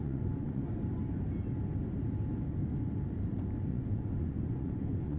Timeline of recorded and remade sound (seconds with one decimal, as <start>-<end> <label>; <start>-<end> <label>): 0.0-0.6 remade; 0.6-3.7 recorded; 3.7-5.2 remade